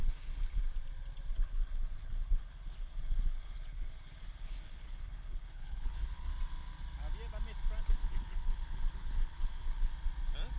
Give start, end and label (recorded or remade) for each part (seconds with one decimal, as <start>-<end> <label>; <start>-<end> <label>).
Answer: 0.0-0.6 remade; 0.6-1.3 recorded; 1.3-6.3 remade; 6.3-7.8 recorded; 7.8-9.9 remade; 9.9-10.6 recorded